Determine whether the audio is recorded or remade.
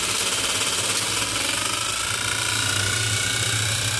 recorded